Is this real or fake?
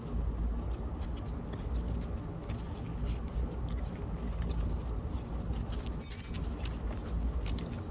real